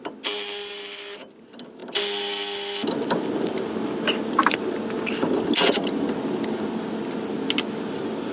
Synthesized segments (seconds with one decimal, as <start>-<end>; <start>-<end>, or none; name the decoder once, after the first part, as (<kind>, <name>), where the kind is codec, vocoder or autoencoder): none